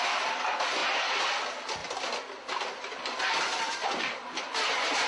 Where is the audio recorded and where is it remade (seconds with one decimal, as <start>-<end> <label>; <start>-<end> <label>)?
0.0-3.8 recorded; 3.8-4.4 remade; 4.4-5.1 recorded